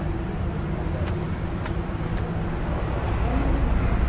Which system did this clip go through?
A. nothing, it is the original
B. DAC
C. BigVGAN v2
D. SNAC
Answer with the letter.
A